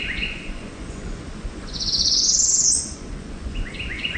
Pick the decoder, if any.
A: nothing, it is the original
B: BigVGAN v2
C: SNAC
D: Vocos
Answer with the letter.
D